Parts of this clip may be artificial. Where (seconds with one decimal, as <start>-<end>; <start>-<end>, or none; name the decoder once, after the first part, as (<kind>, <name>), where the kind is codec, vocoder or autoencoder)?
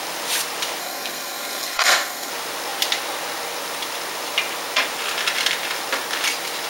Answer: 0.8-2.3 (codec, SNAC)